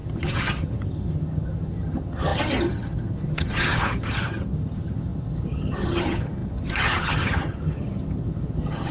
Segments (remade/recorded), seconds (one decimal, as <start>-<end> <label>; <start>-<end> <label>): 0.0-8.9 remade